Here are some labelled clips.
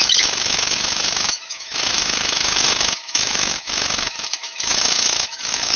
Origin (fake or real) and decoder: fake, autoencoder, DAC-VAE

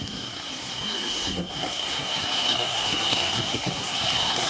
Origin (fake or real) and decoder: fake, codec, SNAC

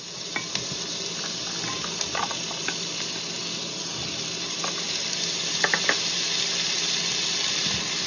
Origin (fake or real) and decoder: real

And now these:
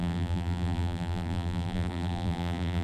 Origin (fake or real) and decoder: fake, vocoder, BigVGAN v2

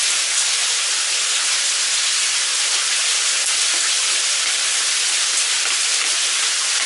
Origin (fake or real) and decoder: real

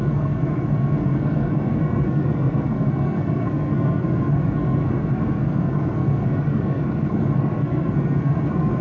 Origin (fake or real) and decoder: fake, codec, SNAC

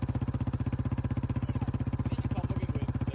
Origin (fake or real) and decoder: real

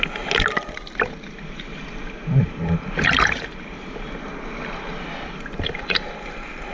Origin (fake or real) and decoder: real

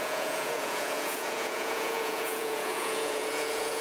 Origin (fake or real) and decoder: fake, vocoder, Vocos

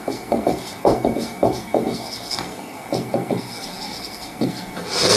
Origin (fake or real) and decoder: fake, codec, SNAC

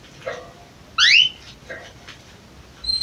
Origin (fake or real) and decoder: real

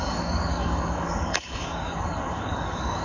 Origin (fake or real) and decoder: fake, codec, DAC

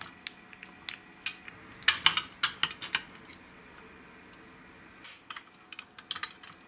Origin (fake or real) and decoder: real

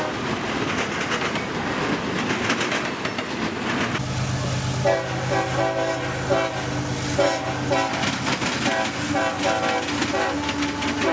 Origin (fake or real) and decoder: real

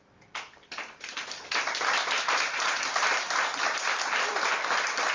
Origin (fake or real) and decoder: fake, vocoder, BigVGAN v2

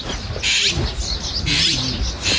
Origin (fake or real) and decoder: real